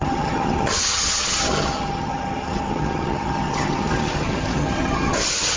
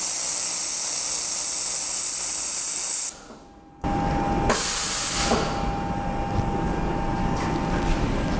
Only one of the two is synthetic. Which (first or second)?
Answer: first